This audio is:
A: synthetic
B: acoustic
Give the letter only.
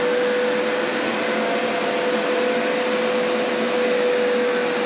B